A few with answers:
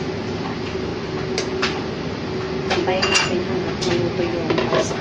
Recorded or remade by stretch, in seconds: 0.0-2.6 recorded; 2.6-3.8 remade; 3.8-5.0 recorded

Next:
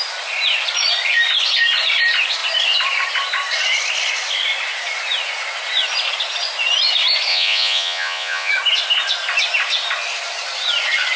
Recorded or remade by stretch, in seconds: 0.0-7.3 recorded; 7.3-8.5 remade; 8.5-11.2 recorded

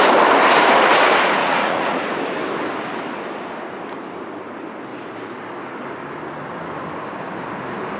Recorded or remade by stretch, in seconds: 0.0-1.4 recorded; 1.4-2.1 remade; 2.1-8.0 recorded